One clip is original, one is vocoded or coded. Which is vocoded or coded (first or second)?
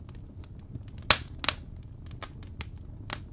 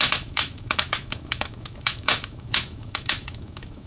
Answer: second